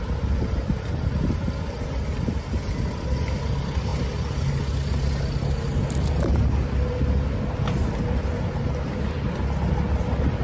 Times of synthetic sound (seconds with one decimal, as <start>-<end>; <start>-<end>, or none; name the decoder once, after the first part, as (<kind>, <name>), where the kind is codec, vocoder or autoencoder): none